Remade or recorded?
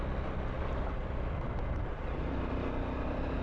recorded